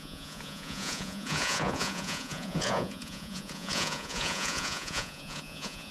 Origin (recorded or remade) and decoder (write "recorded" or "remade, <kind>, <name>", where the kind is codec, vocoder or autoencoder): remade, vocoder, Vocos